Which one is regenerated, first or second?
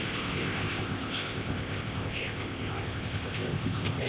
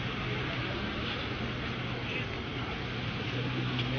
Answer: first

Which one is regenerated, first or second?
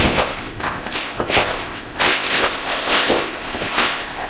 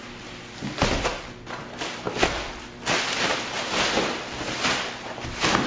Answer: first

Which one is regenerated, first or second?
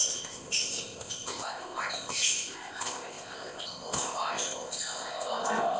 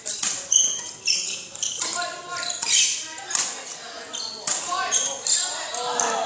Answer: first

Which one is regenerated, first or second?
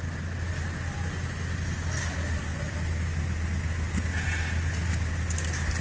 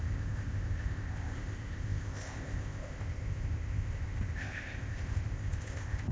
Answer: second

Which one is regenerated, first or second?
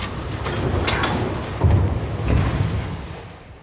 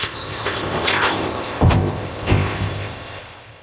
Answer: second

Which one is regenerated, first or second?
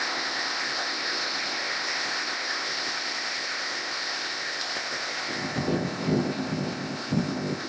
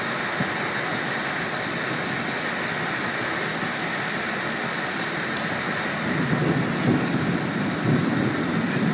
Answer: first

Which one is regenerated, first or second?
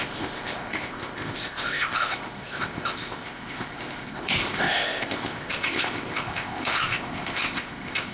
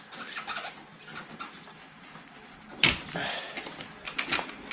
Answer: first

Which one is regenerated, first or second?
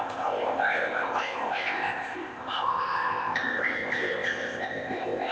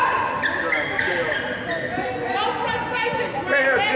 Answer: first